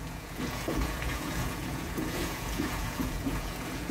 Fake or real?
fake